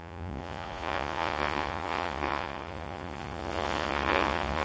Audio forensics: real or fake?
fake